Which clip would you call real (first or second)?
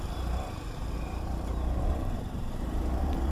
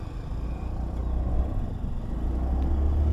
second